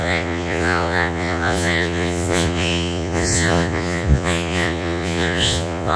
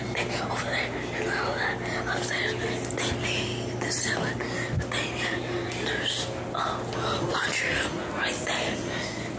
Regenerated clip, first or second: first